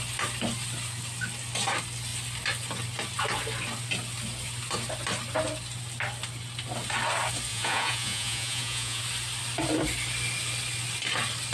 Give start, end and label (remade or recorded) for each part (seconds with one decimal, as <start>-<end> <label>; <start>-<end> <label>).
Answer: 0.0-7.5 recorded; 7.5-9.0 remade; 9.0-11.5 recorded